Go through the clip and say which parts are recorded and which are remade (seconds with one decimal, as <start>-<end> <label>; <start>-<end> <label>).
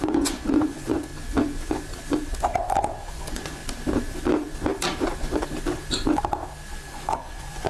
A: 0.0-1.1 remade; 1.1-3.1 recorded; 3.1-3.6 remade; 3.6-6.8 recorded; 6.8-7.7 remade